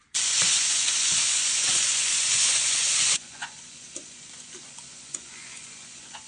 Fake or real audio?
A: fake